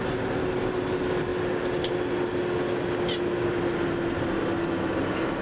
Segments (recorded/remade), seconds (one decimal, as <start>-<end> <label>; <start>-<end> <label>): 0.0-5.4 recorded